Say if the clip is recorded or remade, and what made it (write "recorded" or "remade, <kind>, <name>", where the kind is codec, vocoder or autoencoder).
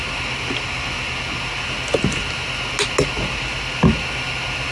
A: recorded